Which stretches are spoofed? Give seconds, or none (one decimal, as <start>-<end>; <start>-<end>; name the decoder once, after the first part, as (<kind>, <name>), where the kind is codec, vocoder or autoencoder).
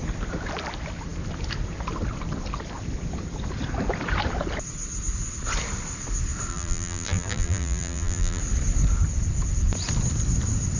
6.5-8.4 (vocoder, BigVGAN v2)